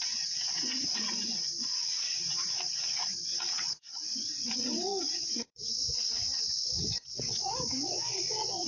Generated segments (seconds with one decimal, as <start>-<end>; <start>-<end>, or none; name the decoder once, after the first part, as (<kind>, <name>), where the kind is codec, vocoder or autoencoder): 0.0-8.7 (vocoder, WaveNeXt)